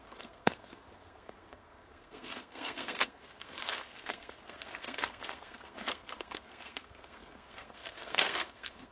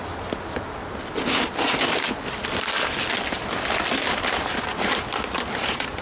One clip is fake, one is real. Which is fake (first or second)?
first